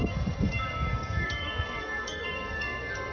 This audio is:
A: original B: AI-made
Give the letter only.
B